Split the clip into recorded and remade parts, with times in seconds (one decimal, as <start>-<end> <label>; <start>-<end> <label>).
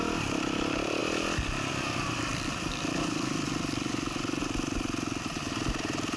0.0-1.0 remade; 1.0-1.7 recorded; 1.7-4.4 remade; 4.4-5.2 recorded; 5.2-6.2 remade